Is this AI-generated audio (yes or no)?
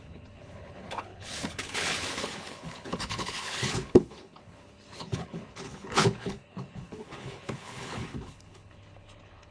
yes